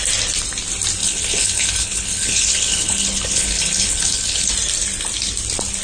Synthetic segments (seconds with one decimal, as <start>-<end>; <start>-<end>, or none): 1.0-4.5